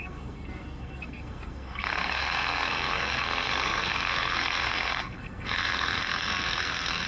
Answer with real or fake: fake